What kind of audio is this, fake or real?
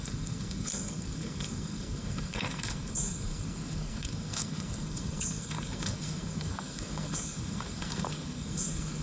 fake